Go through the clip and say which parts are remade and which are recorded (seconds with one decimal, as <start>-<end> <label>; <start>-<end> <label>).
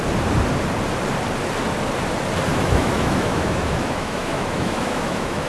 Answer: 0.0-2.5 recorded; 2.5-5.5 remade